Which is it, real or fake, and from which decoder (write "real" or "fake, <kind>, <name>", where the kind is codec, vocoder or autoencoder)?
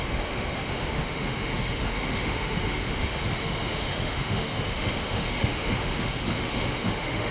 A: fake, autoencoder, DAC-VAE